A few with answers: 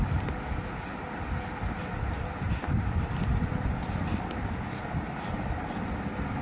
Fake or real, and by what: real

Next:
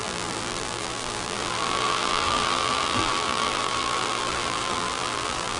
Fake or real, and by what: fake, vocoder, BigVGAN v2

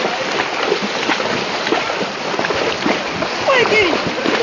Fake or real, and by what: real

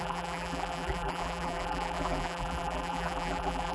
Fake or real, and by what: fake, vocoder, BigVGAN v2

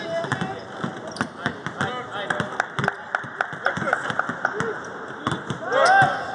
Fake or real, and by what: real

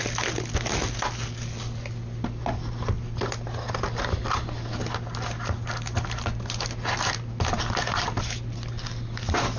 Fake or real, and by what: real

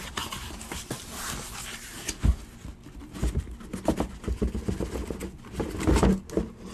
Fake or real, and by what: real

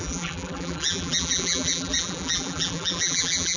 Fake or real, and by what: fake, vocoder, BigVGAN v2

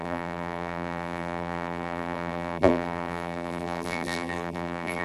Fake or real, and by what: fake, vocoder, BigVGAN v2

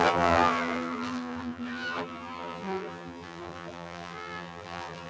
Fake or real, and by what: fake, vocoder, BigVGAN v2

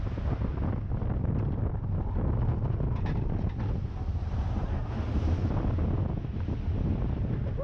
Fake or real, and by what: real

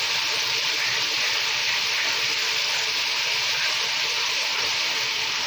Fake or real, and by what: fake, vocoder, BigVGAN v2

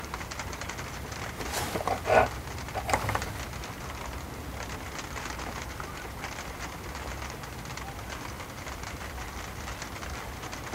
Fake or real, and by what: fake, vocoder, BigVGAN v2